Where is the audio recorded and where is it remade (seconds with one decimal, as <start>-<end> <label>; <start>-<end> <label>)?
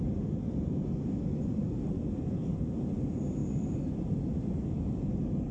0.0-2.5 recorded; 2.5-3.0 remade; 3.0-3.4 recorded; 3.4-4.5 remade; 4.5-5.5 recorded